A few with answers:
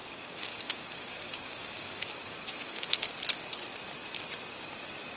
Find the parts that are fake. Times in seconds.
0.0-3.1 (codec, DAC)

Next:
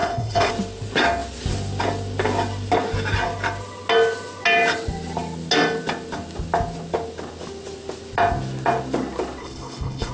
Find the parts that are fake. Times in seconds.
0.0-0.5 (codec, HILCodec); 9.4-10.1

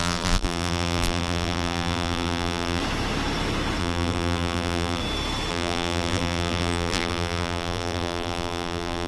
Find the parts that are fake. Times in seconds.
0.0-2.8 (vocoder, BigVGAN v2); 3.8-5.0; 5.5-9.1

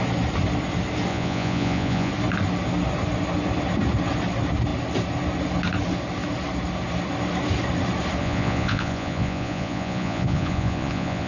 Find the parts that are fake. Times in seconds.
1.1-2.1 (vocoder, Vocos); 8.2-11.3